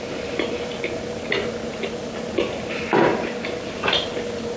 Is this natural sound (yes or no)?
yes